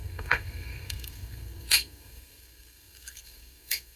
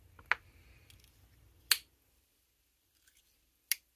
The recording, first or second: second